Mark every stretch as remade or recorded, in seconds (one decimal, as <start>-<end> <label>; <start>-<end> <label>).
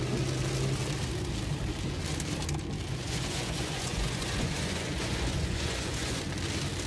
0.0-2.9 recorded; 2.9-6.2 remade; 6.2-6.9 recorded